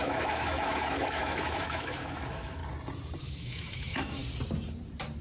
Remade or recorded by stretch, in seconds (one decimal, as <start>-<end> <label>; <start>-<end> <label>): 0.0-2.6 remade; 2.6-3.2 recorded; 3.2-4.2 remade; 4.2-5.2 recorded